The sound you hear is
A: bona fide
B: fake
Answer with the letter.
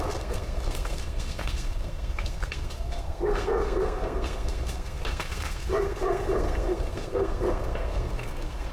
B